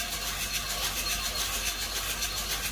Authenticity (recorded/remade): recorded